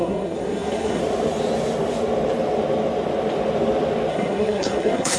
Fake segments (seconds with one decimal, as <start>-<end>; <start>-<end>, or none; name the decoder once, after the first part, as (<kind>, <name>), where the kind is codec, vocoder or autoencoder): 0.0-1.0 (codec, SNAC); 4.1-5.2

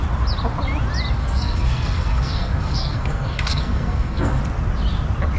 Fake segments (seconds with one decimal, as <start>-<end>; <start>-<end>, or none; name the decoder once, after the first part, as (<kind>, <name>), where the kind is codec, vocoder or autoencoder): 1.2-4.4 (codec, SNAC)

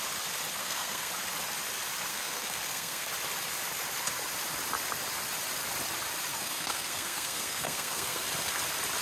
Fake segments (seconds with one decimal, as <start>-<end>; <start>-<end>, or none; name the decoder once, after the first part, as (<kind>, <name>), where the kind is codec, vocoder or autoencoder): 0.6-1.1 (codec, SNAC); 2.1-3.1; 6.3-8.2

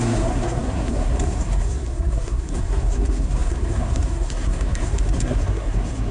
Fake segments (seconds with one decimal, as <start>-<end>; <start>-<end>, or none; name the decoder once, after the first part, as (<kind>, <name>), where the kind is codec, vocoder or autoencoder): 0.0-6.1 (codec, SNAC)

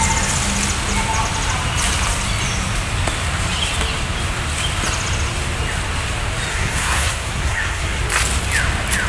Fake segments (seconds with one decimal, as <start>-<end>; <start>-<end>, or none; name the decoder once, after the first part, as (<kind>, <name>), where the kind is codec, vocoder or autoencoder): 6.5-8.0 (codec, SNAC)

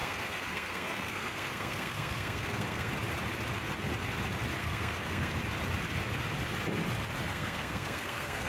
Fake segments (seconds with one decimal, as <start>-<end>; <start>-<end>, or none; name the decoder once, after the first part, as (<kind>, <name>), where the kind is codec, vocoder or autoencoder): 0.0-2.9 (codec, SNAC); 4.6-5.3; 7.3-8.5

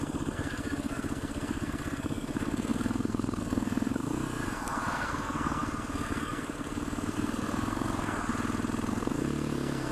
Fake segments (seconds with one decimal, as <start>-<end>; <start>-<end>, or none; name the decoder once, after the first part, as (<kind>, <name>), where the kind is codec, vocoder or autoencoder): 0.0-8.3 (codec, SNAC); 8.9-9.9

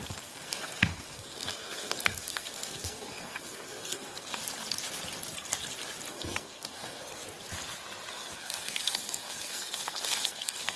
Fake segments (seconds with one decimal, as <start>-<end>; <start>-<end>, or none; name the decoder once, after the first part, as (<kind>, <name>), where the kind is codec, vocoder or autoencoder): 0.0-4.4 (codec, SNAC); 6.1-7.2; 8.1-10.8